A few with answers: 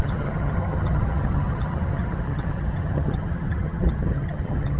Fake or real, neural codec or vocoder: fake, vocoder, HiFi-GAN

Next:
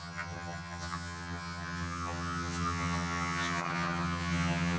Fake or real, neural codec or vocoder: fake, vocoder, HiFi-GAN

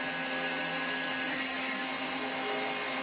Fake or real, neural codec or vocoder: real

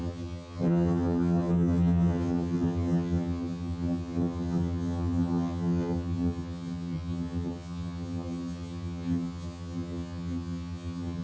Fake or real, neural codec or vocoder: fake, vocoder, HiFi-GAN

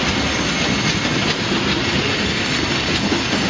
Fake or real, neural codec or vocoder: real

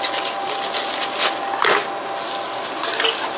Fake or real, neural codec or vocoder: real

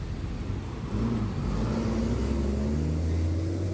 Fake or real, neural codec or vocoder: real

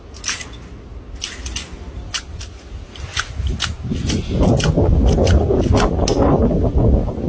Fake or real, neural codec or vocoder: real